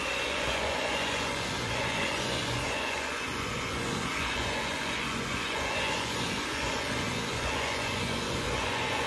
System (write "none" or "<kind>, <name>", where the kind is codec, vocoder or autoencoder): vocoder, Vocos